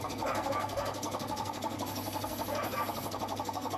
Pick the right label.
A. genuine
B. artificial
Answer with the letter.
B